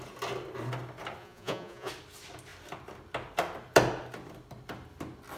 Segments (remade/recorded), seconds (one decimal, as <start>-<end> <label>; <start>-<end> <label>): 0.0-1.2 recorded; 1.2-1.9 remade; 1.9-5.4 recorded